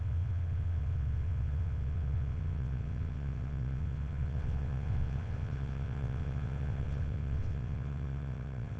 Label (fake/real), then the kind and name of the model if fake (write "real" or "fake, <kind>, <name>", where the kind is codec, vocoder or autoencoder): fake, vocoder, WaveNeXt